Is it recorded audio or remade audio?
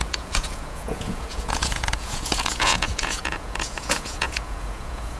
remade